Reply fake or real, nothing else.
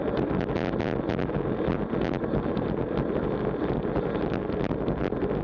real